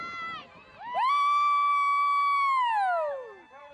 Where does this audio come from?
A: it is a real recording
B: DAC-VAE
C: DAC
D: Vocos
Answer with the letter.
A